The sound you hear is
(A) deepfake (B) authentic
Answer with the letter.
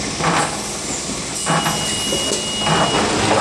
B